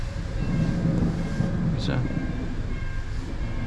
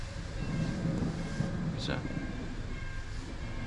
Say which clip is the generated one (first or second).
second